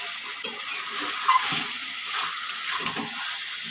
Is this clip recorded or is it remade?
recorded